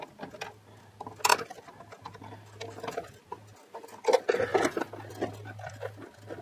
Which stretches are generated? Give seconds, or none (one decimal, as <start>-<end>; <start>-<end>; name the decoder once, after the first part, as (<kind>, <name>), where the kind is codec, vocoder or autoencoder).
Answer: none